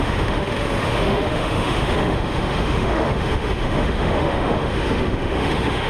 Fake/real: fake